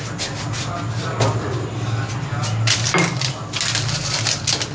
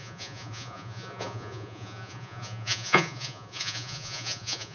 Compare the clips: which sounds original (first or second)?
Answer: first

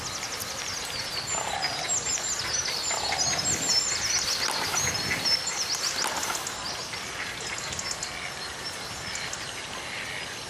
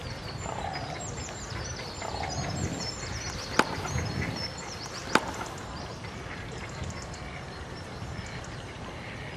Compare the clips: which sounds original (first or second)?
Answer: first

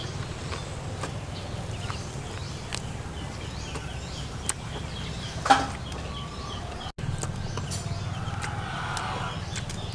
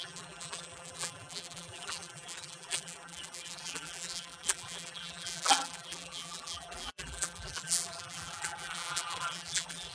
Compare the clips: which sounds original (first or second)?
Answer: first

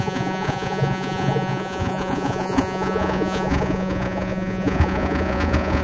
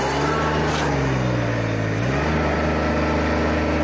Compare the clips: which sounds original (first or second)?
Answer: second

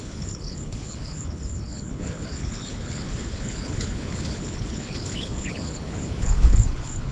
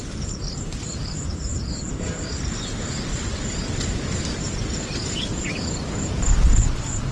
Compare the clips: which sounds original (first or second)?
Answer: second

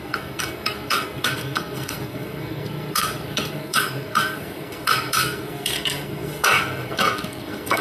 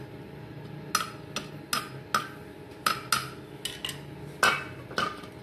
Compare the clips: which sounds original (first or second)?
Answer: second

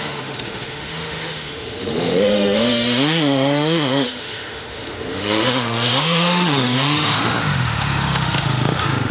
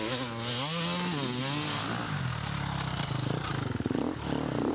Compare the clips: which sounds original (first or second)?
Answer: second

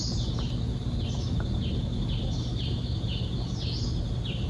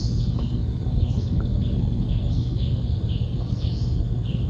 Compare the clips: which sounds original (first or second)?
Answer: first